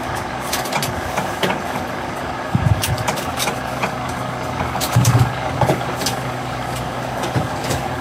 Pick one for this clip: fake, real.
fake